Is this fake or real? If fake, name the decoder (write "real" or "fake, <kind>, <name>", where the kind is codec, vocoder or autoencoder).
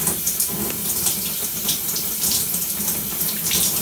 fake, vocoder, BigVGAN v2